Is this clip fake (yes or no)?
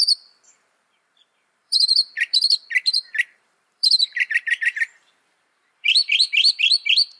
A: yes